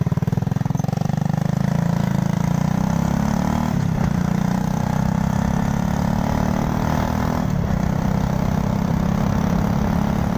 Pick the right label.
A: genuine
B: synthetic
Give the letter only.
A